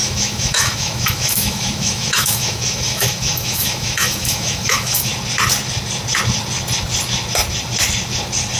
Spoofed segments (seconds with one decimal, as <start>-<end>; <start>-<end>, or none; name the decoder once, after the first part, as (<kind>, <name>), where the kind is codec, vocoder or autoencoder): 0.0-5.1 (autoencoder, DAC-VAE)